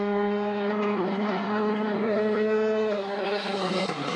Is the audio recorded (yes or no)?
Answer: no